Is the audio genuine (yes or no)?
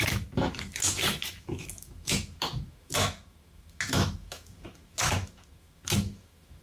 no